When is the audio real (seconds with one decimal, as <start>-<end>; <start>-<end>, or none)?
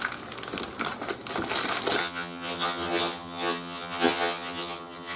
0.0-2.0